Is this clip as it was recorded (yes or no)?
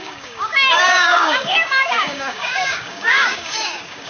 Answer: no